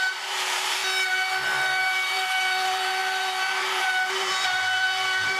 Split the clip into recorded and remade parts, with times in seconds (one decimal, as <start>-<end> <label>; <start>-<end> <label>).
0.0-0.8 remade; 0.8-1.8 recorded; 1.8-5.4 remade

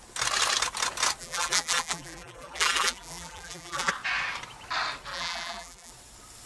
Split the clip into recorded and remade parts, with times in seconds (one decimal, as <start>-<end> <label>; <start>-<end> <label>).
0.0-1.2 recorded; 1.2-3.9 remade; 3.9-5.1 recorded; 5.1-5.9 remade; 5.9-6.5 recorded

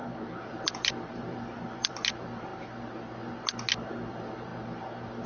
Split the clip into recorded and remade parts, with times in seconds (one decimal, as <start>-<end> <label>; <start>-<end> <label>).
0.0-2.5 remade; 2.5-4.1 recorded; 4.1-4.5 remade; 4.5-5.3 recorded

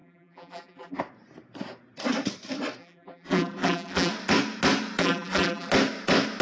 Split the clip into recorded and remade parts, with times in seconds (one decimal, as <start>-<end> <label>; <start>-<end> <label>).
0.0-1.0 remade; 1.0-2.8 recorded; 2.8-4.1 remade; 4.1-5.0 recorded; 5.0-5.7 remade; 5.7-6.4 recorded

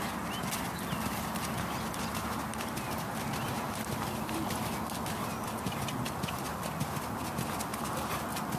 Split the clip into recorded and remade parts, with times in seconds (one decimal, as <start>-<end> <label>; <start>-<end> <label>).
0.0-2.5 recorded; 2.5-3.1 remade; 3.1-7.7 recorded; 7.7-8.2 remade; 8.2-8.6 recorded

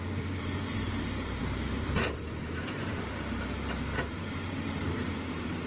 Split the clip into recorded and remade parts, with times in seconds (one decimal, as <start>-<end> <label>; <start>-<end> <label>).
0.0-5.7 remade

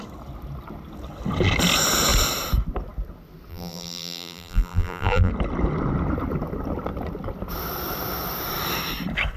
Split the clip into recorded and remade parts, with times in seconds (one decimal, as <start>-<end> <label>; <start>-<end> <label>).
0.0-3.5 recorded; 3.5-5.3 remade; 5.3-9.4 recorded

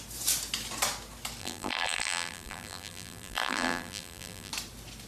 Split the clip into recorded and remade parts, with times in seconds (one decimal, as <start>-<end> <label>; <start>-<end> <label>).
0.0-1.4 recorded; 1.4-4.5 remade; 4.5-5.1 recorded